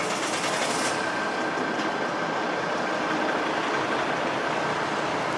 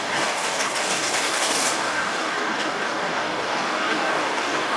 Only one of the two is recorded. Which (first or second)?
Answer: first